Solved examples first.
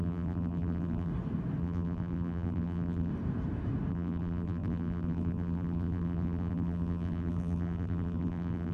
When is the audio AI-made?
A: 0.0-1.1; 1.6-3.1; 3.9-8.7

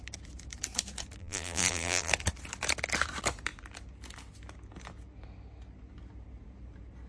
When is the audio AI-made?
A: 1.2-2.1

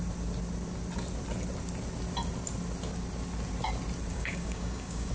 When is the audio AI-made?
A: 4.1-5.1

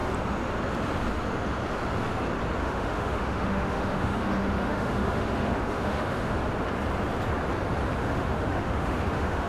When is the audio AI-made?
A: 2.6-6.3; 8.0-9.5

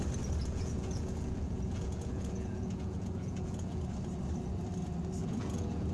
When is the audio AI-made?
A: 0.4-3.8; 5.2-5.9

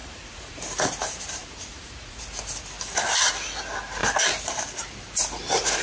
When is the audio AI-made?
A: 0.0-0.6; 1.4-2.2

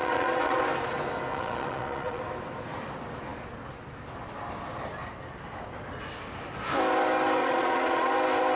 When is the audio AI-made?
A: 0.0-0.6; 1.3-2.2; 7.4-8.1

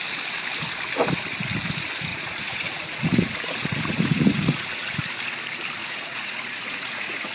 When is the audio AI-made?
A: 2.1-5.0; 5.8-7.3